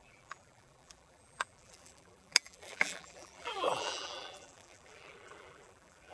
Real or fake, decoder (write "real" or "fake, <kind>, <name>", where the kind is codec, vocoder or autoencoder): fake, vocoder, BigVGAN v2